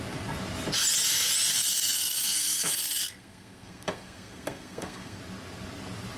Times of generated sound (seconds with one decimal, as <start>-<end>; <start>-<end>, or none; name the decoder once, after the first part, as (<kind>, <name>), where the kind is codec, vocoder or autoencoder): 1.5-5.2 (codec, SNAC)